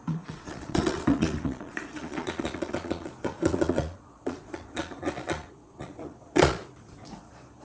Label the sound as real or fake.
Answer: fake